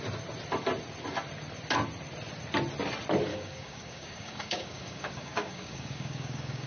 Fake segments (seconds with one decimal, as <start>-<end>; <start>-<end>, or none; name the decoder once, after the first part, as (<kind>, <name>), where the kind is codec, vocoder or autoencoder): 3.3-6.7 (codec, DAC)